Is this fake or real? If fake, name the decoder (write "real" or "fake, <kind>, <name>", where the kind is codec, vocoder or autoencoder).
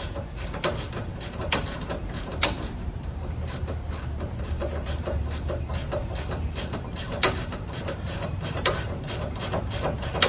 fake, vocoder, BigVGAN v2